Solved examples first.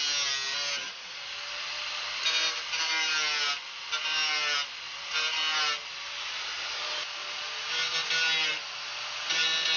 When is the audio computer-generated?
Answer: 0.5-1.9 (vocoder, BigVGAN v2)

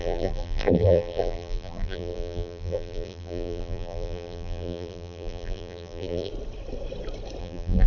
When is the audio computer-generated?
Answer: 0.0-6.3 (vocoder, BigVGAN v2); 7.4-7.9